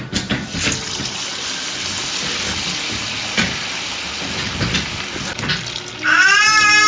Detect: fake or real real